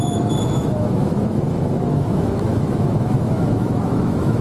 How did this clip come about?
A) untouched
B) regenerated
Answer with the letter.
B